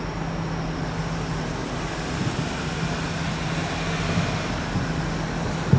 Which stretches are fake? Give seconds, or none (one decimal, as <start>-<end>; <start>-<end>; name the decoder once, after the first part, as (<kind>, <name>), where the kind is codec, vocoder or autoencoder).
none